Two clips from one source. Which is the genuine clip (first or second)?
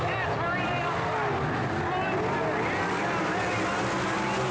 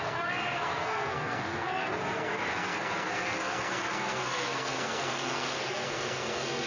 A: first